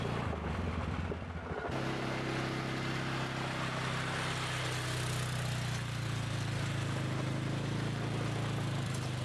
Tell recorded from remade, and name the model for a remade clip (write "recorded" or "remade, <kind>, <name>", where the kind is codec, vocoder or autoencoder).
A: recorded